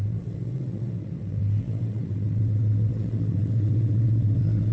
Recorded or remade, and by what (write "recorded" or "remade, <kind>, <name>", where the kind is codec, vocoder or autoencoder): remade, vocoder, WaveNeXt